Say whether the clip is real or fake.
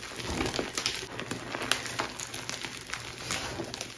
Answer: real